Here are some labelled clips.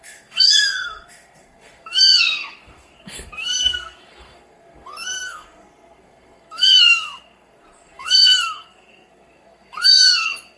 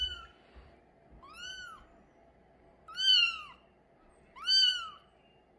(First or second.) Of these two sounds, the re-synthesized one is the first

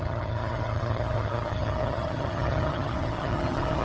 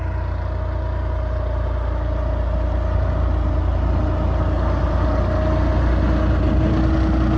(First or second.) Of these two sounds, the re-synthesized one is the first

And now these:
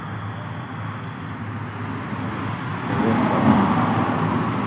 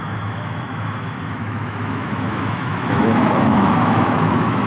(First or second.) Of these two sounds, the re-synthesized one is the second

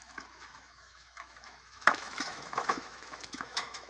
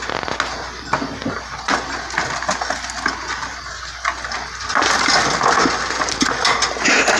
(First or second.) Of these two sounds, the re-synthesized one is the first